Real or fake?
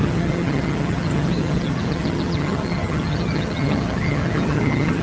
fake